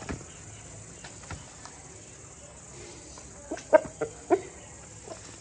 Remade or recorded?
recorded